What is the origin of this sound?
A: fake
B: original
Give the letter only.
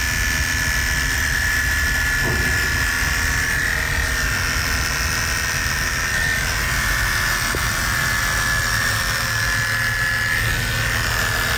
B